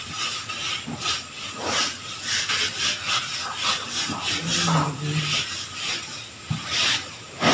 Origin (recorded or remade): recorded